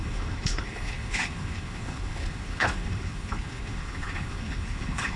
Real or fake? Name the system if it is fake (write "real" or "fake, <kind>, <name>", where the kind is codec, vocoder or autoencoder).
fake, codec, HILCodec